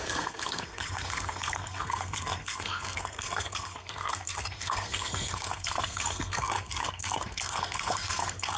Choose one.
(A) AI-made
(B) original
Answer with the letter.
A